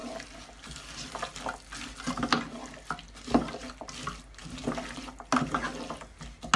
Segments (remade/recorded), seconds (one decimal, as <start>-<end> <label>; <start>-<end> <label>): 0.0-6.6 recorded